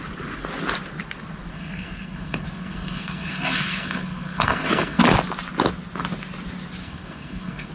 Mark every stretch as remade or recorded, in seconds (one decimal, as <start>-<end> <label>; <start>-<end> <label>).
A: 0.0-1.5 recorded; 1.5-5.0 remade; 5.0-6.8 recorded; 6.8-7.7 remade

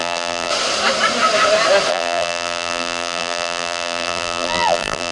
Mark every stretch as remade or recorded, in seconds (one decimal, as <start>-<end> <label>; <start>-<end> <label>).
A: 0.0-0.5 remade; 0.5-1.9 recorded; 1.9-5.1 remade

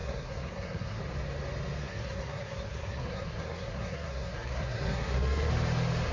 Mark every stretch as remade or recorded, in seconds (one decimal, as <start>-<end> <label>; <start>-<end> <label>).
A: 0.0-1.0 remade; 1.0-1.8 recorded; 1.8-5.5 remade; 5.5-6.1 recorded